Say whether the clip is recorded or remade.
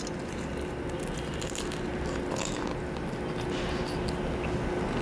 recorded